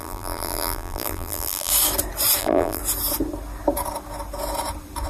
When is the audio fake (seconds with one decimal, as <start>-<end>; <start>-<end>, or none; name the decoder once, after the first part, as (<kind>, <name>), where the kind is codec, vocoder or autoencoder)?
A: 0.0-1.7 (vocoder, BigVGAN v2); 2.4-2.8